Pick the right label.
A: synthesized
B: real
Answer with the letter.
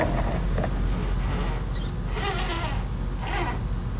B